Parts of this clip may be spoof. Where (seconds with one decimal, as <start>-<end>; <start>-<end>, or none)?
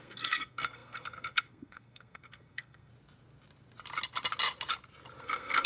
0.0-2.9; 5.2-5.7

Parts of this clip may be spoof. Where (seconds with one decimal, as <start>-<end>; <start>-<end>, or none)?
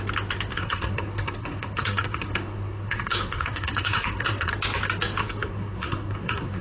0.5-4.5; 5.2-6.6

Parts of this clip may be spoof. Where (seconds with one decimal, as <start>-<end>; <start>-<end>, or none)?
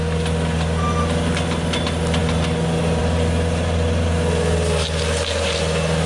none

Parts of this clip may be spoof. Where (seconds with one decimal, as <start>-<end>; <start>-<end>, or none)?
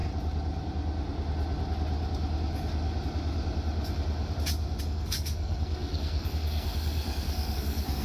4.8-8.0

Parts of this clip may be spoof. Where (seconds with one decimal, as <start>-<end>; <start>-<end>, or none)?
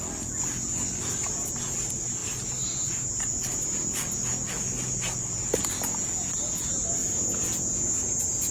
none